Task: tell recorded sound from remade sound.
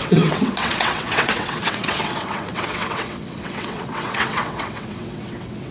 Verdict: remade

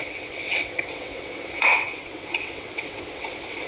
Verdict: remade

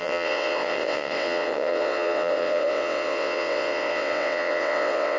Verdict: remade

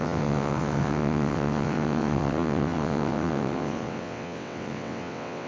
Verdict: remade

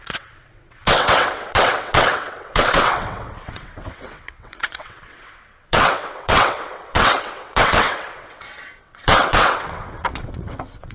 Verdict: remade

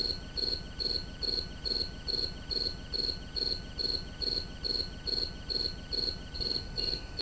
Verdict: recorded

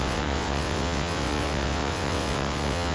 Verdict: remade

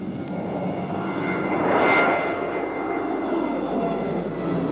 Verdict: recorded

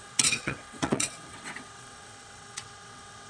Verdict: remade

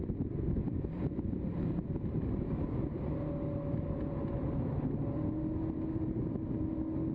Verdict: recorded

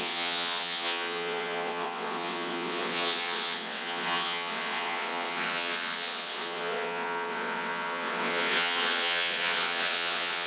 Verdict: remade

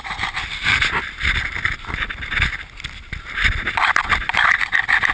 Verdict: recorded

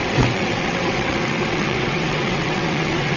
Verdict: remade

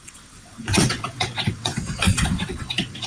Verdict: remade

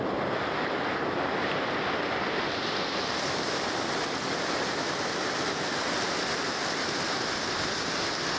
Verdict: recorded